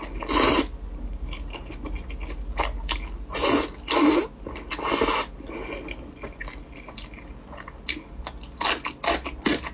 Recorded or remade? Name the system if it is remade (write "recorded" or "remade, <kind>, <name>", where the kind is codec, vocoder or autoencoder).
recorded